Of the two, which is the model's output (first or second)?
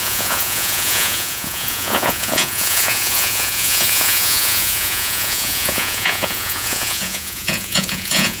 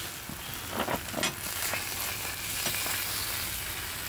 first